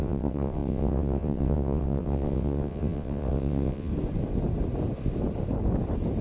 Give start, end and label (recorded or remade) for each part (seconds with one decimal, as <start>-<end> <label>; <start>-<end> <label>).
0.0-3.9 remade; 3.9-6.2 recorded